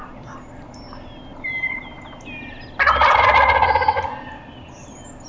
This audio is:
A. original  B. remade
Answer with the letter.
A